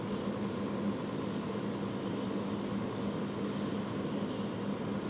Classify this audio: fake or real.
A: real